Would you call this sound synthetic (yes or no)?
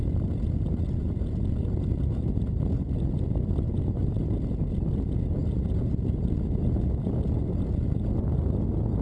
no